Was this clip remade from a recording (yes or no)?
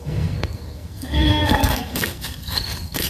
yes